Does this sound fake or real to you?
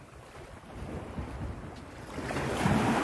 fake